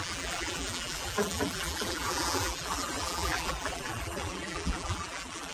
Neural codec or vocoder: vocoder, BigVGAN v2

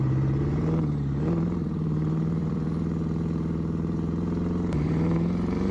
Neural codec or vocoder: vocoder, BigVGAN v2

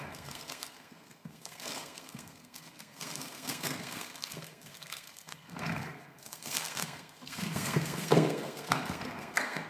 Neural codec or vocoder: codec, SNAC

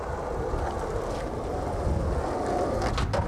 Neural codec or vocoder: none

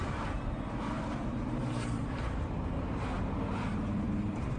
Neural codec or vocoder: vocoder, BigVGAN v2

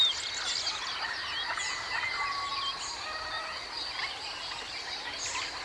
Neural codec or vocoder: none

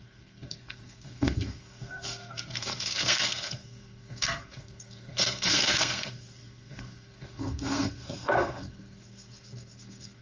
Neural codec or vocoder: codec, SNAC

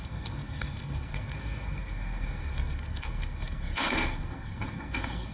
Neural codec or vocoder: codec, SNAC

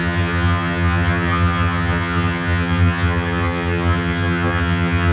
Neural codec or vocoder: vocoder, HiFi-GAN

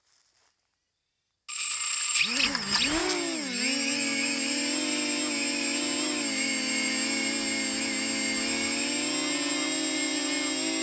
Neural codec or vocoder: none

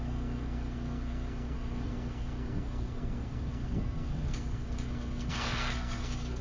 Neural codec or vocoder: codec, SNAC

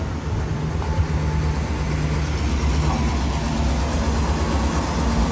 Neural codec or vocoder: none